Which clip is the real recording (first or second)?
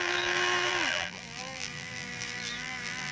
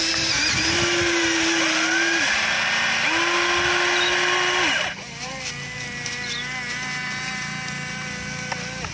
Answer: second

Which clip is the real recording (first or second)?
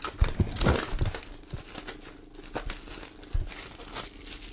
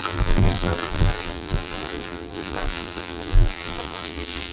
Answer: first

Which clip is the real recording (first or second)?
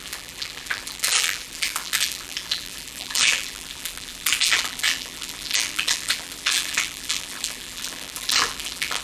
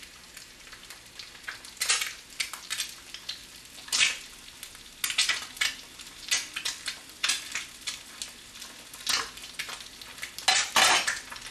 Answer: second